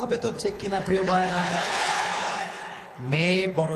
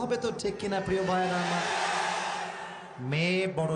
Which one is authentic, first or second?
second